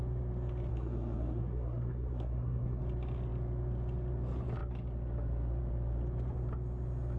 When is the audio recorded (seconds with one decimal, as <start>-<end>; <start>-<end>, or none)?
0.0-0.7; 2.8-7.2